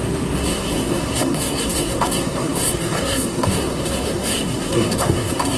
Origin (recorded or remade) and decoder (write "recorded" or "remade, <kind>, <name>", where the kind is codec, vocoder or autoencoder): remade, codec, SNAC